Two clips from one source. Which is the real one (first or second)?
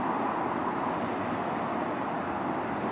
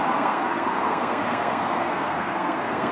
first